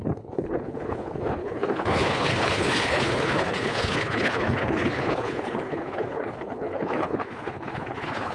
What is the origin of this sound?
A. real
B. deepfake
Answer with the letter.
B